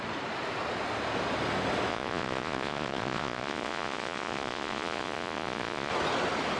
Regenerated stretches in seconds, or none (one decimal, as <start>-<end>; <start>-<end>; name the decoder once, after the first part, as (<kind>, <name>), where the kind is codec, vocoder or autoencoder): 1.9-5.9 (vocoder, Vocos)